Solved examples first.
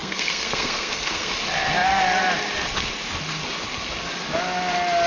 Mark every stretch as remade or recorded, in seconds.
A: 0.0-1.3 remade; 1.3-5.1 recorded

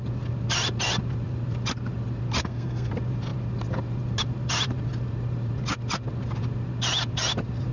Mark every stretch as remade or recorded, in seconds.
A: 0.0-2.4 recorded; 2.4-2.9 remade; 2.9-7.7 recorded

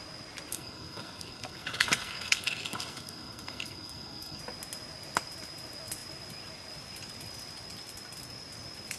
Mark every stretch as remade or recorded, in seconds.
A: 0.0-0.5 recorded; 0.5-4.4 remade; 4.4-9.0 recorded

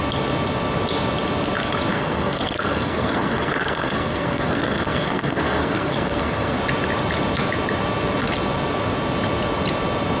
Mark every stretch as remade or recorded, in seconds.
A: 0.0-1.9 recorded; 1.9-6.6 remade; 6.6-10.2 recorded

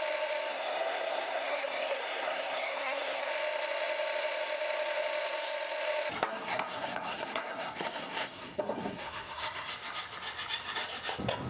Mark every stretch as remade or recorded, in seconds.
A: 0.0-0.5 recorded; 0.5-3.3 remade; 3.3-6.3 recorded; 6.3-9.7 remade; 9.7-11.5 recorded

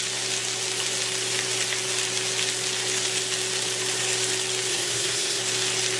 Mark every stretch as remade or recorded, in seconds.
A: 0.0-4.7 recorded; 4.7-5.4 remade; 5.4-6.0 recorded